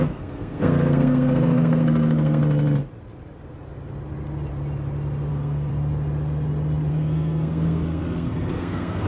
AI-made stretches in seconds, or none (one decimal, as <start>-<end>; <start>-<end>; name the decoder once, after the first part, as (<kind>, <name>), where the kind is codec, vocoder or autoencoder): 0.0-2.4 (codec, SNAC); 5.3-5.7; 6.9-9.1